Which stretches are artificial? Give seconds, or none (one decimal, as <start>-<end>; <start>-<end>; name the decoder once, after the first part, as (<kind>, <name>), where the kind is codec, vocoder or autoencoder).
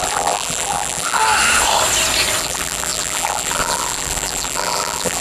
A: 0.0-1.2 (vocoder, BigVGAN v2); 2.4-5.2